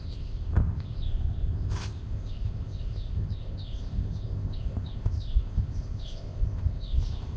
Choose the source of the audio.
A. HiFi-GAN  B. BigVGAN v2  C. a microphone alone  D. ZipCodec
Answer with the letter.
D